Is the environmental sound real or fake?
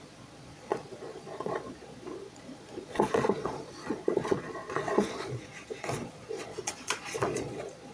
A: fake